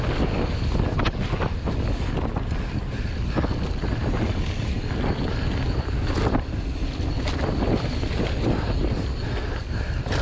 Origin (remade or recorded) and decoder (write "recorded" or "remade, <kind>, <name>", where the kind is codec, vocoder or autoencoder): recorded